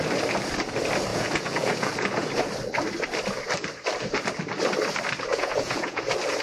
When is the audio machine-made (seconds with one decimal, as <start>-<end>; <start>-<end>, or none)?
1.1-2.3; 5.3-6.0